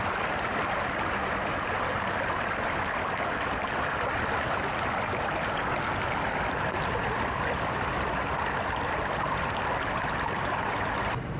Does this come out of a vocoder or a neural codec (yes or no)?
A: no